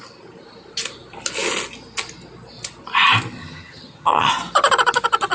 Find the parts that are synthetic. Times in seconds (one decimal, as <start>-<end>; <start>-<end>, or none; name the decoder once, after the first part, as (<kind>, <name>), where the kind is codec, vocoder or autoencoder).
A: 3.4-4.3 (vocoder, HiFi-GAN)